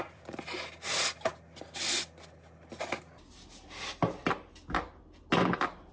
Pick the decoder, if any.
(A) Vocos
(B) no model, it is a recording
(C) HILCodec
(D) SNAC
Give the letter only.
B